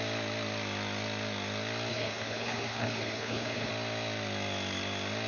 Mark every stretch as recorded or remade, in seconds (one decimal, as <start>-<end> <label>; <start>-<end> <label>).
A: 0.0-1.9 recorded; 1.9-3.7 remade; 3.7-5.3 recorded